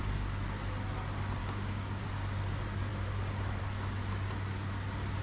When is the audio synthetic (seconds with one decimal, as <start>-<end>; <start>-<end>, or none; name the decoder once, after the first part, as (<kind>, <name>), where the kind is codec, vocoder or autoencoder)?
1.4-2.0 (codec, DAC)